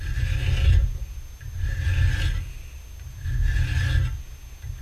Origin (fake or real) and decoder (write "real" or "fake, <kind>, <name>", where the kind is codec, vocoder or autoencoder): real